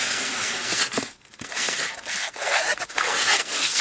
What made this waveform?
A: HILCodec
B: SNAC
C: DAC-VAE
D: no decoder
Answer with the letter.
B